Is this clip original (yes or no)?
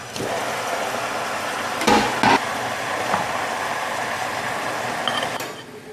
yes